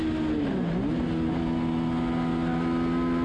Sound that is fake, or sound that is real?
real